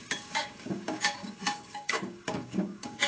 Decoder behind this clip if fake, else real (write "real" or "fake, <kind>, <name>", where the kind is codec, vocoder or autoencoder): fake, codec, DAC